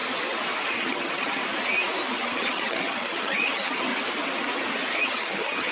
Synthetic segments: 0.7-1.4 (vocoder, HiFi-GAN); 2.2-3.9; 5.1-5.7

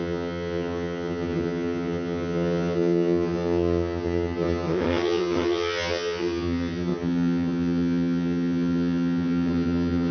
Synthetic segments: 0.0-10.1 (vocoder, HiFi-GAN)

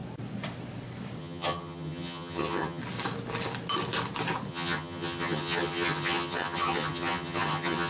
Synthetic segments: 1.2-2.8 (vocoder, HiFi-GAN); 4.5-7.9

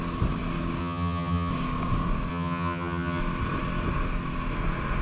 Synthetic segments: 0.8-1.5 (vocoder, HiFi-GAN); 2.3-3.2

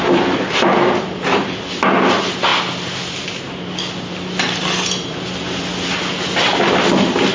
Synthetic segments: none

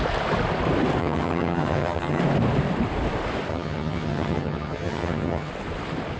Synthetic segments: 1.0-2.2 (vocoder, HiFi-GAN); 3.5-5.5